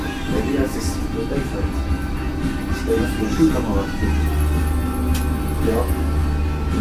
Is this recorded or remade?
recorded